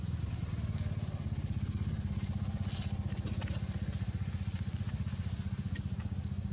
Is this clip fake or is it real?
real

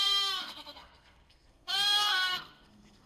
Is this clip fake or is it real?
fake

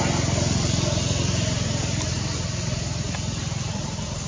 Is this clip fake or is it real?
real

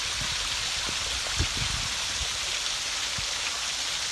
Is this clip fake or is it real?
real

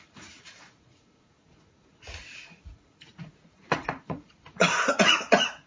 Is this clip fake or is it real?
fake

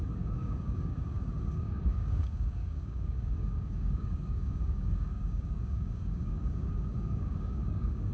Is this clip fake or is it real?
fake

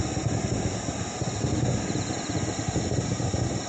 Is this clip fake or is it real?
real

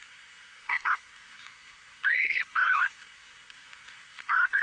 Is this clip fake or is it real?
fake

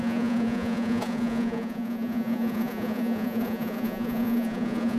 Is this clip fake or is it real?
fake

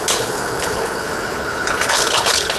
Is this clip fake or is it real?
fake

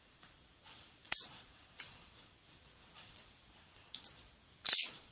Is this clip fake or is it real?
fake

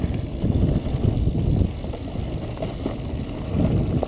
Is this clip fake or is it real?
real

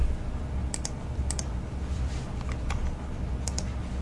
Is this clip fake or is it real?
real